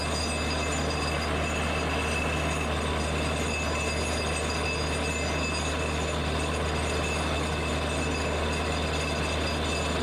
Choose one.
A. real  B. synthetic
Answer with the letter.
A